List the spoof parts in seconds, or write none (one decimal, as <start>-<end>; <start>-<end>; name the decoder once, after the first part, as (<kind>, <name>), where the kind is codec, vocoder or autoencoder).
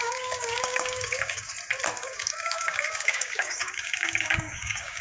0.0-1.5 (codec, DAC); 2.0-5.0